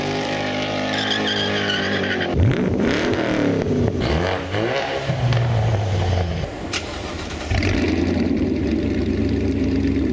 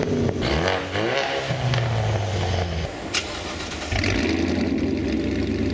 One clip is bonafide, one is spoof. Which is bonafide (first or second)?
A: second